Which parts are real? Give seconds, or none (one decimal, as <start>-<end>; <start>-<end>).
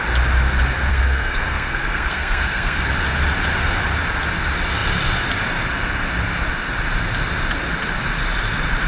0.0-0.9; 2.9-8.9